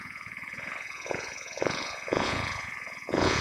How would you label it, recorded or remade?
remade